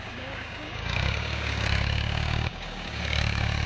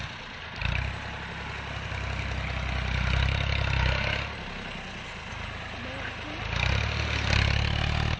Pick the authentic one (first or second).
second